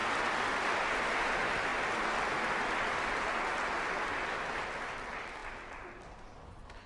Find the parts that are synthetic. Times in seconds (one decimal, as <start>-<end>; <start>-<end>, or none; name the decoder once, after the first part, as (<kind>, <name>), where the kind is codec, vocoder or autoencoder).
none